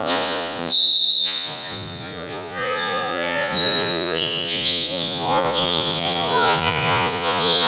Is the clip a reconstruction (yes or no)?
yes